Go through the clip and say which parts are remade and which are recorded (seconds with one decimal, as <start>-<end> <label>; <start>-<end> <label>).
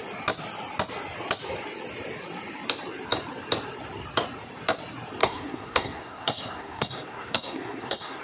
0.0-5.2 recorded; 5.2-8.2 remade